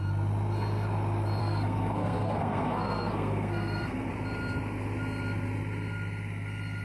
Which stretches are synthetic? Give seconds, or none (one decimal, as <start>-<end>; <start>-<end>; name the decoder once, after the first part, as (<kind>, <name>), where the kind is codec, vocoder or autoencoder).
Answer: 1.4-4.1 (codec, SNAC)